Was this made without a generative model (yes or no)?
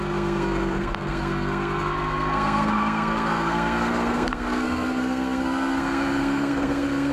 no